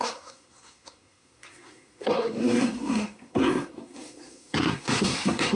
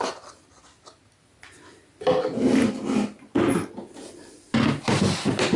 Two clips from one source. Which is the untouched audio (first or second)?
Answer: second